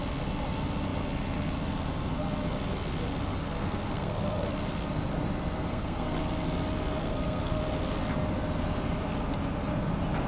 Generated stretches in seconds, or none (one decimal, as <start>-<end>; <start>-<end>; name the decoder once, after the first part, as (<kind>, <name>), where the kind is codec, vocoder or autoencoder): 3.5-4.5 (codec, SNAC); 5.7-6.2; 7.0-7.6